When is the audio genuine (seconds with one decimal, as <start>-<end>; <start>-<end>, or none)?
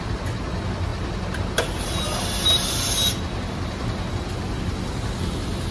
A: 0.0-5.7